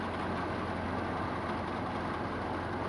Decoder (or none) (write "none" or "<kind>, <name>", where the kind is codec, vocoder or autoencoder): none